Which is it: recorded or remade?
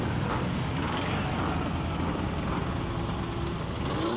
recorded